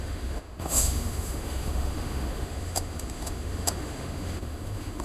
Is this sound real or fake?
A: fake